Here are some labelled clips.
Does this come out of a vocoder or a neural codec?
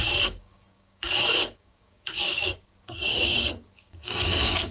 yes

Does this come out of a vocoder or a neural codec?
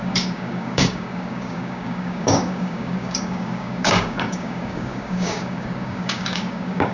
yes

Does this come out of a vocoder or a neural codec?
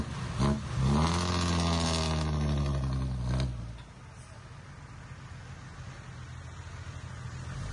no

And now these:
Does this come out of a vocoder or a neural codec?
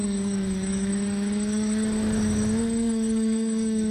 yes